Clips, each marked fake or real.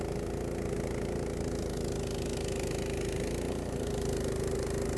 real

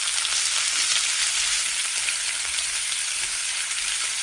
fake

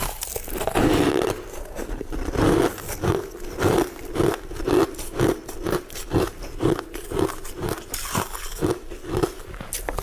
real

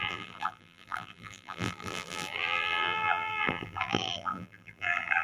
fake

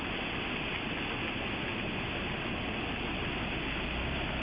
real